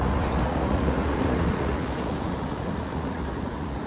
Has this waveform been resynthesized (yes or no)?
yes